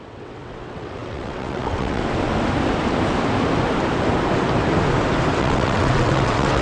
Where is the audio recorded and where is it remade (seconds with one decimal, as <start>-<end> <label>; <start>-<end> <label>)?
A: 0.0-2.0 remade; 2.0-5.4 recorded; 5.4-6.6 remade

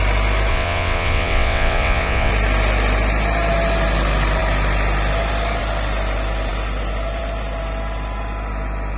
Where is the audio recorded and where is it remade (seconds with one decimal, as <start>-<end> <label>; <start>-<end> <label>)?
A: 0.0-0.5 recorded; 0.5-2.3 remade; 2.3-9.0 recorded

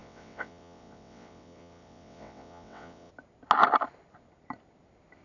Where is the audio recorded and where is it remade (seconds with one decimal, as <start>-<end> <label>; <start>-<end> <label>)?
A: 0.0-3.1 remade; 3.1-5.2 recorded

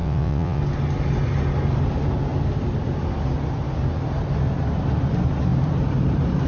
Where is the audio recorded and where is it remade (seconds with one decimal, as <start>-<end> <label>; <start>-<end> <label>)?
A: 0.0-0.6 remade; 0.6-6.5 recorded

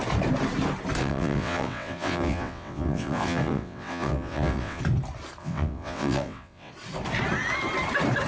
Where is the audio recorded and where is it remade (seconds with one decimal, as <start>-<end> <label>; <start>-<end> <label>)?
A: 0.0-1.0 recorded; 1.0-4.8 remade; 4.8-5.4 recorded; 5.4-6.7 remade; 6.7-8.3 recorded

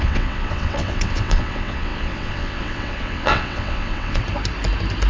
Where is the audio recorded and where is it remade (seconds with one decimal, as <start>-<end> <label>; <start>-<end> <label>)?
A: 0.0-4.2 remade; 4.2-5.1 recorded

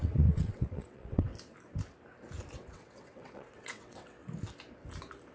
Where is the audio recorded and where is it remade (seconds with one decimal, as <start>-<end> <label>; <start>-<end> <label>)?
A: 0.0-1.3 remade; 1.3-2.6 recorded; 2.6-4.2 remade; 4.2-5.3 recorded

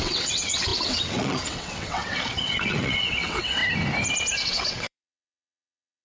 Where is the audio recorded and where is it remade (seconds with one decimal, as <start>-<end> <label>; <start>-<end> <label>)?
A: 0.0-3.6 remade; 3.6-4.4 recorded; 4.4-6.0 remade